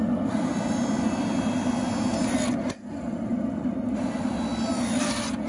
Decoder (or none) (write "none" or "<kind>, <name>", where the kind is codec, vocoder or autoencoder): none